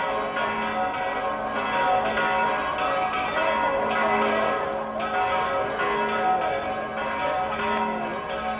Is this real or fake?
real